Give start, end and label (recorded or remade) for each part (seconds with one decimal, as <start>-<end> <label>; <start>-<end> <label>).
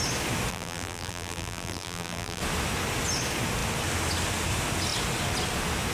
0.0-0.5 recorded; 0.5-2.4 remade; 2.4-5.9 recorded